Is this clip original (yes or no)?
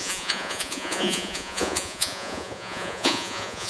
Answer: no